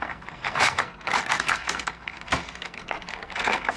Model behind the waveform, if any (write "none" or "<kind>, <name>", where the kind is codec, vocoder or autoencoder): codec, SNAC